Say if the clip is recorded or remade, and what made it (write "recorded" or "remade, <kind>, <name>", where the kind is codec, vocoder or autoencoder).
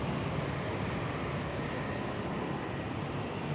recorded